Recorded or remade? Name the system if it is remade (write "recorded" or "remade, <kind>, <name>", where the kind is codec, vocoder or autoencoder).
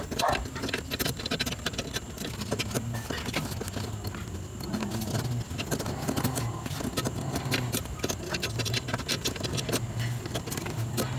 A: recorded